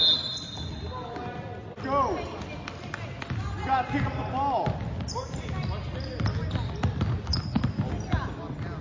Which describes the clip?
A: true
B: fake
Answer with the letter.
A